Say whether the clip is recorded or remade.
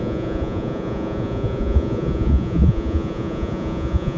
remade